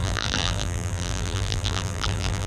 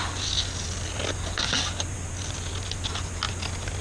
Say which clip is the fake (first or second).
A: first